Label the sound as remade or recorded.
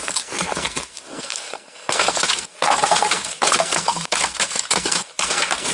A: remade